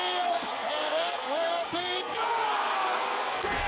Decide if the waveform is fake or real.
fake